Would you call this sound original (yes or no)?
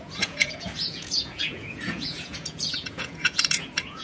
no